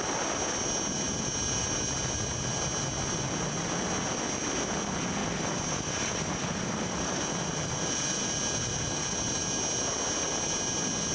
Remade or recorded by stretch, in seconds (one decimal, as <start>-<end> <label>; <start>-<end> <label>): 0.0-5.2 recorded; 5.2-7.2 remade; 7.2-11.1 recorded